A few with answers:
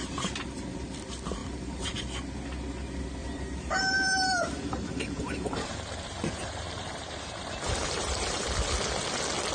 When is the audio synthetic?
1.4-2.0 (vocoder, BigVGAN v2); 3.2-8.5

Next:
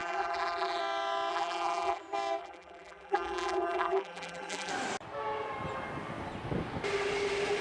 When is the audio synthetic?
0.0-0.8 (vocoder, BigVGAN v2); 1.3-2.0; 2.4-4.7

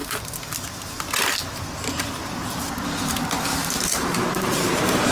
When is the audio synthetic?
3.5-5.1 (vocoder, BigVGAN v2)

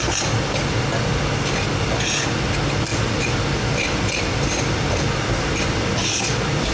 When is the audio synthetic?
2.9-6.7 (vocoder, BigVGAN v2)

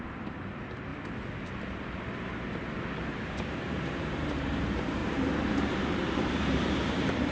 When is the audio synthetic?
0.0-0.9 (vocoder, BigVGAN v2); 2.8-7.3